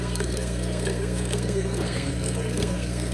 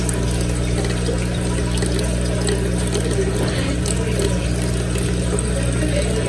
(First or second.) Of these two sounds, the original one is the second